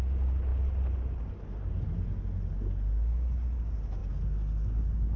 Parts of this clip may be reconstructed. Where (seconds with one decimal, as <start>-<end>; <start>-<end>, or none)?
none